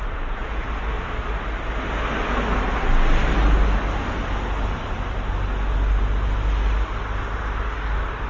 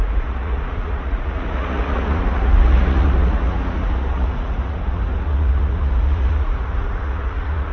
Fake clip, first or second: second